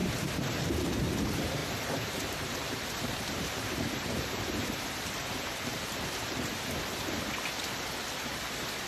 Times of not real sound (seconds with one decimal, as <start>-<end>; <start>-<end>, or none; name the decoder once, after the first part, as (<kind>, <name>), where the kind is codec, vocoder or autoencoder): 0.0-0.7 (vocoder, BigVGAN v2); 1.6-6.1